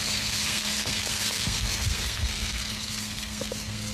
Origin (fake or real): fake